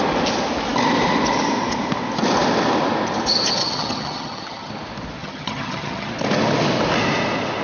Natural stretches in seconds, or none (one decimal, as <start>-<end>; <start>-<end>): 0.0-3.6; 4.7-5.2; 6.1-7.6